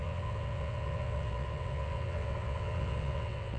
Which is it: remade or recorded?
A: remade